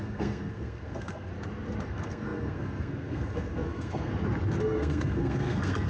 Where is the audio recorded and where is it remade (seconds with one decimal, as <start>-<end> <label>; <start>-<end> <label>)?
0.0-1.3 remade; 1.3-1.9 recorded; 1.9-4.1 remade; 4.1-4.6 recorded; 4.6-5.9 remade